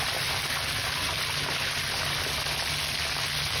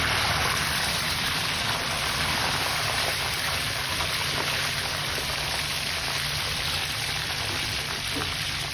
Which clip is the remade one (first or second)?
second